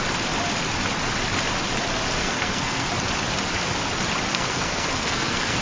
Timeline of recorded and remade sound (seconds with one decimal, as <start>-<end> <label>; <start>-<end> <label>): 0.0-2.2 recorded; 2.2-2.9 remade; 2.9-4.3 recorded; 4.3-5.6 remade